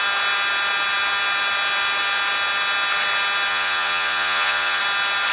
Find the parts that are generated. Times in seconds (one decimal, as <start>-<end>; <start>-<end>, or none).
3.5-4.8